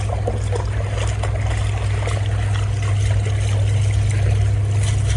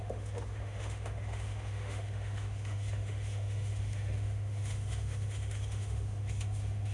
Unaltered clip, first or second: first